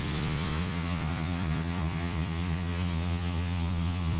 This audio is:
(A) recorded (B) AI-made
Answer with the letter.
B